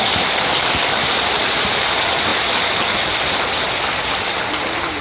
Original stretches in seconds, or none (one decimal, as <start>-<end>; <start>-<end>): 0.0-5.0

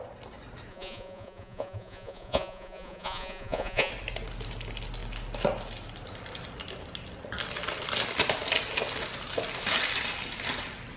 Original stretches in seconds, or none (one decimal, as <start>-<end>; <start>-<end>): 0.0-0.7; 3.9-11.0

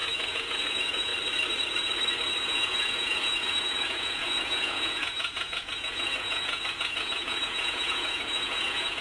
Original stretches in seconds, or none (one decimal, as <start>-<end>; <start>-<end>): 1.1-2.4

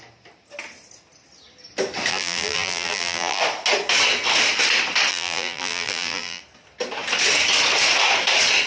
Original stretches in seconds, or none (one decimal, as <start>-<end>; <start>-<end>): 0.0-2.1; 3.4-5.1; 6.4-8.7

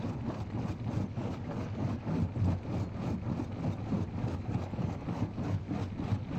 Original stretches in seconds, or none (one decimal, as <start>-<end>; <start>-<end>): 0.0-1.1; 2.2-4.2; 5.7-6.4

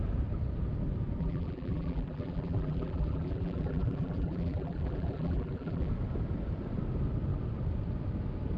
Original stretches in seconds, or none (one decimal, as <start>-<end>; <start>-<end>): 0.0-1.2; 5.9-8.6